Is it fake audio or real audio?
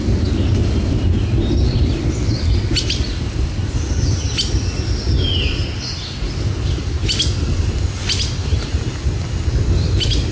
real